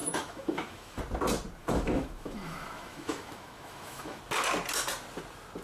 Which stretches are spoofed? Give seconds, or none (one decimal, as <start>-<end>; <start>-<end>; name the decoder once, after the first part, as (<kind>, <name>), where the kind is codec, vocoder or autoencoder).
0.0-1.0 (autoencoder, DAC-VAE); 1.6-4.2